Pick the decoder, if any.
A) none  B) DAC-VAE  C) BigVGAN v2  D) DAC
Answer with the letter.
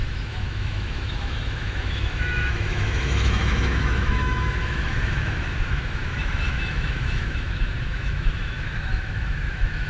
B